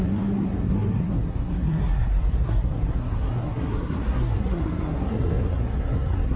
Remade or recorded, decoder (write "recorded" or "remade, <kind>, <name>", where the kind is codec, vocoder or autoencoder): remade, codec, SNAC